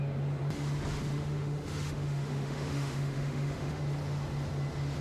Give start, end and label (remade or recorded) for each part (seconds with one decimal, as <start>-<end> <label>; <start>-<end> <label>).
0.0-1.1 recorded; 1.1-3.8 remade; 3.8-5.0 recorded